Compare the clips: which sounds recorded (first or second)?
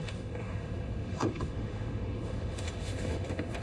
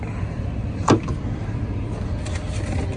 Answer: second